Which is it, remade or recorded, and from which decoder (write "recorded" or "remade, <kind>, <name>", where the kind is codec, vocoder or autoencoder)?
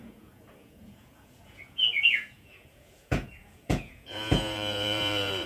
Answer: remade, vocoder, Vocos